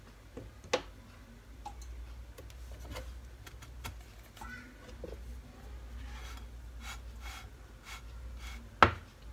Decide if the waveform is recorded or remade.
recorded